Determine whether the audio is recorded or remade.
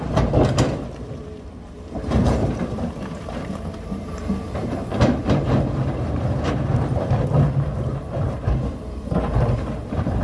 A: remade